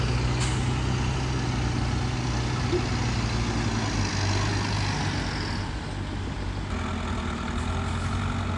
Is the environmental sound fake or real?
real